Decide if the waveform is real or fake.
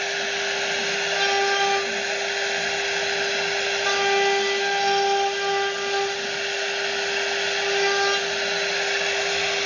real